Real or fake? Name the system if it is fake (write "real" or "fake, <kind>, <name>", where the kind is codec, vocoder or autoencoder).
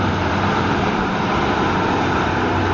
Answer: real